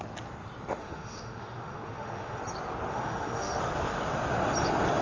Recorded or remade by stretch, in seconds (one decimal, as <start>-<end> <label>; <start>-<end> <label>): 0.0-0.8 recorded; 0.8-2.4 remade; 2.4-2.9 recorded; 2.9-3.6 remade; 3.6-5.0 recorded